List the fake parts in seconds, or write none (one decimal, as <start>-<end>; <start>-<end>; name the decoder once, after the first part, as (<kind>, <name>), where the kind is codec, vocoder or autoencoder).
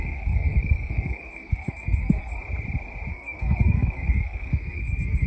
0.0-2.3 (codec, SNAC); 3.1-5.3